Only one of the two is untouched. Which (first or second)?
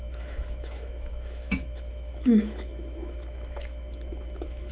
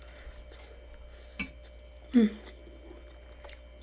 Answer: second